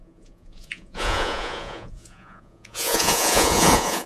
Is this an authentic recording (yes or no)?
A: no